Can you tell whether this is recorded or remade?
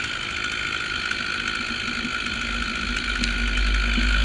recorded